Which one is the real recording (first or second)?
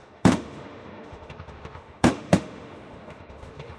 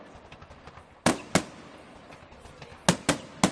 second